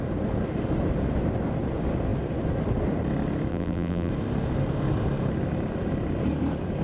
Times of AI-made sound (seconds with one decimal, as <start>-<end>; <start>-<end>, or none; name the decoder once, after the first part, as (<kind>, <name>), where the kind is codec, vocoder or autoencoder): 3.5-4.1 (vocoder, BigVGAN v2)